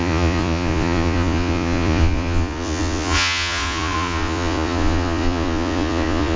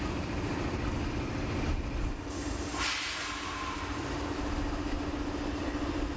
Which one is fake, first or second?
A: first